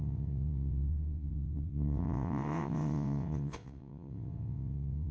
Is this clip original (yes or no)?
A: no